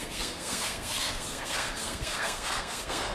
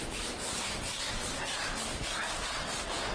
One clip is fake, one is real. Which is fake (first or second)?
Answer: first